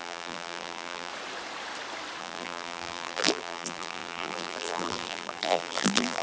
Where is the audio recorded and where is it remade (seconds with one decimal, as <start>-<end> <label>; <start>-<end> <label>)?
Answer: 0.0-1.1 remade; 1.1-2.2 recorded; 2.2-6.2 remade